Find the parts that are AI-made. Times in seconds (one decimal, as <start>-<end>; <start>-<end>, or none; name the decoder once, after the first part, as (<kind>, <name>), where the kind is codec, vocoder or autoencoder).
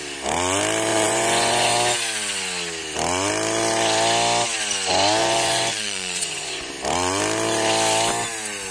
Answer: 0.9-1.7 (vocoder, Vocos); 5.2-6.7